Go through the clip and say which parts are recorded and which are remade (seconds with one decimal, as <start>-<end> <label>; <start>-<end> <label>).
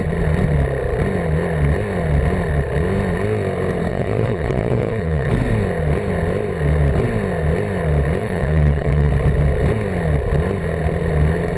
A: 0.0-3.9 recorded; 3.9-5.3 remade; 5.3-8.2 recorded; 8.2-9.1 remade; 9.1-11.6 recorded